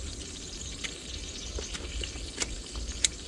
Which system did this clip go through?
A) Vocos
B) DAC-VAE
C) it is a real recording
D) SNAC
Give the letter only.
C